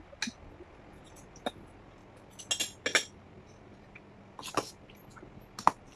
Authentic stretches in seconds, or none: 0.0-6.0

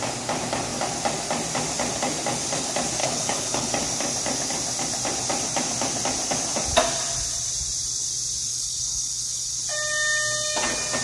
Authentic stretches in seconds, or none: 0.0-3.0; 3.7-8.5; 9.6-11.0